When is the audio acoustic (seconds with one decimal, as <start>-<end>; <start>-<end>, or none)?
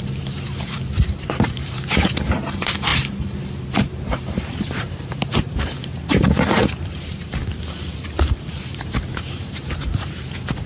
7.4-8.5